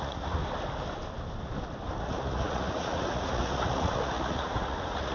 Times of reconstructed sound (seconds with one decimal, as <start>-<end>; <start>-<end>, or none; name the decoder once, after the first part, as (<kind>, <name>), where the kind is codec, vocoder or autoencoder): 0.0-0.4 (vocoder, Vocos); 2.0-5.1